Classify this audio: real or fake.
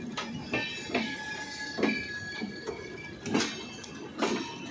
real